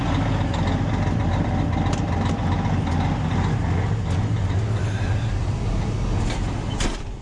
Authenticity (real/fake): real